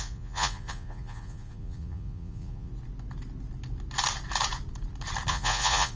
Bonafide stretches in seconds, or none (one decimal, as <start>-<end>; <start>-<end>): 2.7-5.3